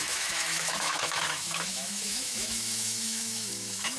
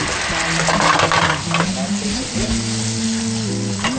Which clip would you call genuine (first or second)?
second